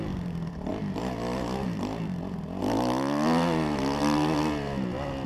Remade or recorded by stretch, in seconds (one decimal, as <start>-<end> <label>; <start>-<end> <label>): 0.0-5.3 recorded